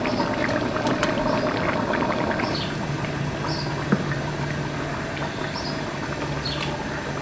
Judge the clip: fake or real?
real